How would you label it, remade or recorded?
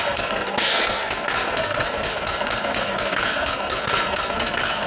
remade